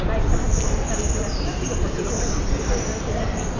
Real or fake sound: fake